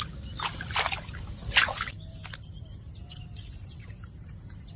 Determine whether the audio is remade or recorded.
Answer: recorded